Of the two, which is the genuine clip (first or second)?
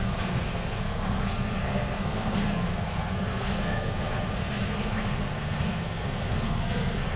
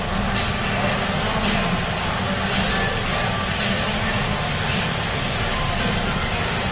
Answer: second